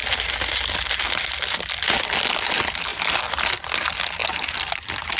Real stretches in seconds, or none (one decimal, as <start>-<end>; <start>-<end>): 0.0-5.2